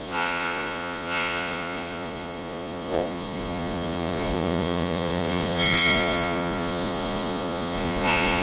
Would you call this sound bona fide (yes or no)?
no